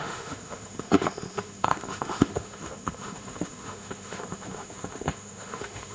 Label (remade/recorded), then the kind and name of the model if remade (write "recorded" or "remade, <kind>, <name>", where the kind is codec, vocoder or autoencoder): remade, autoencoder, DAC-VAE